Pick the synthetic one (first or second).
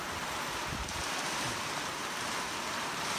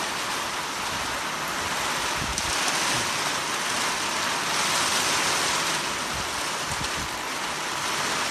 first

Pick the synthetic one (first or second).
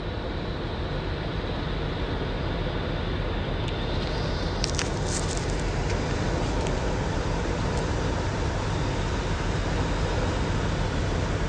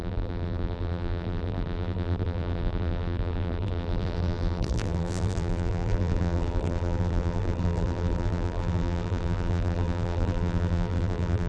second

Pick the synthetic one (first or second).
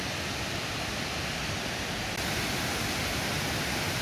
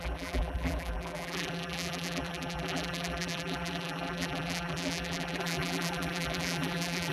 second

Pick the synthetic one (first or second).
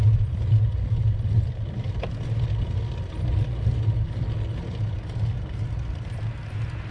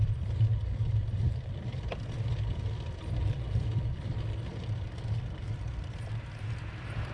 second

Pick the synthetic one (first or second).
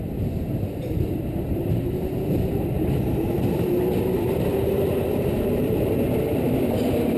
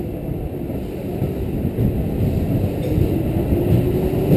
first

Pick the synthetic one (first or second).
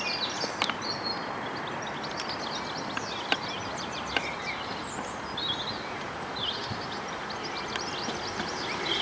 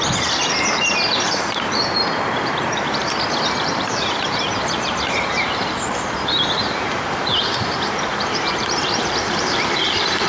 second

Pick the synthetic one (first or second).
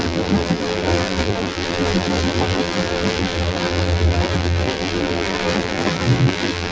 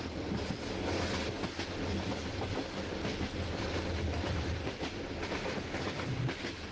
first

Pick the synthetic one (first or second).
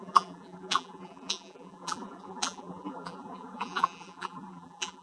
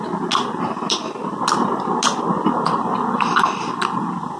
first